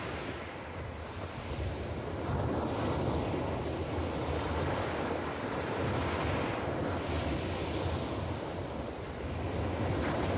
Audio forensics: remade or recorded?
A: recorded